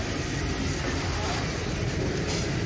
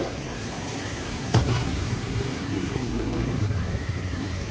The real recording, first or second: first